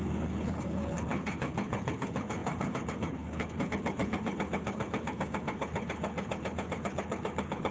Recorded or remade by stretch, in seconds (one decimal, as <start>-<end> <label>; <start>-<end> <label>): 0.0-7.7 remade